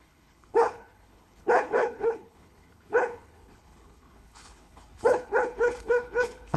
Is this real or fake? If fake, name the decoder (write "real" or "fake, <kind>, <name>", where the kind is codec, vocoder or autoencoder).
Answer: fake, codec, HILCodec